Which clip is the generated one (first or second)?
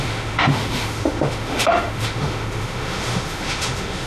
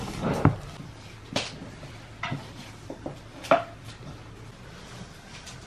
first